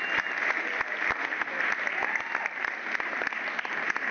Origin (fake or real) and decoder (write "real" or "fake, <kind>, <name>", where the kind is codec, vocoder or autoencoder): real